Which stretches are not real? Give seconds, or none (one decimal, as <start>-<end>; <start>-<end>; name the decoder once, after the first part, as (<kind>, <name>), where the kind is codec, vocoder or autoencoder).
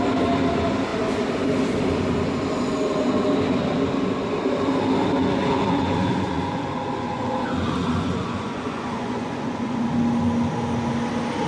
5.2-9.8 (vocoder, Vocos)